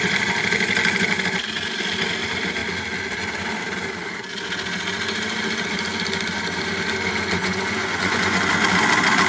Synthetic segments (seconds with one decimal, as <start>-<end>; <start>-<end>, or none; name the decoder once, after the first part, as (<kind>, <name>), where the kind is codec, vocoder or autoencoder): 7.4-8.4 (vocoder, Vocos)